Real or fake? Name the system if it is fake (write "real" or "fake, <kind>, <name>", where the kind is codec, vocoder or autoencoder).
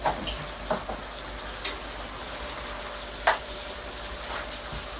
real